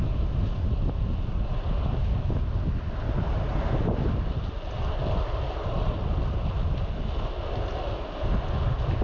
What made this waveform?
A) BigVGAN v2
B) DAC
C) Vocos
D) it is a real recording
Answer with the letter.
D